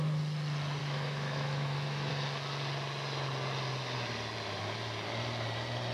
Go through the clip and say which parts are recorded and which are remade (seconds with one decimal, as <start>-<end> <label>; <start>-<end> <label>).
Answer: 0.0-0.8 recorded; 0.8-2.1 remade; 2.1-5.9 recorded